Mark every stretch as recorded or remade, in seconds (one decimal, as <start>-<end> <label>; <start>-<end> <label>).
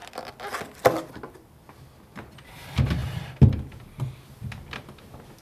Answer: 0.0-5.4 recorded